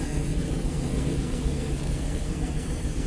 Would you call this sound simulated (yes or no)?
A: yes